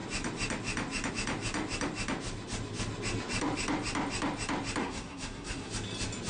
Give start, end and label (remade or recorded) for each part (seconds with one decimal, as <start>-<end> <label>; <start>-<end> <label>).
0.0-4.8 recorded; 4.8-5.7 remade; 5.7-6.3 recorded